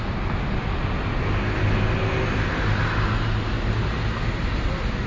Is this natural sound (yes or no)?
yes